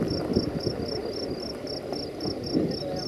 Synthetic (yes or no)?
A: no